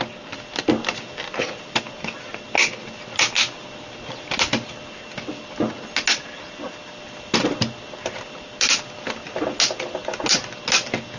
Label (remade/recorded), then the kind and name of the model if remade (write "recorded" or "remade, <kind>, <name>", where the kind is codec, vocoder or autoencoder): recorded